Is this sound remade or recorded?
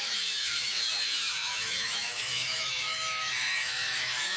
remade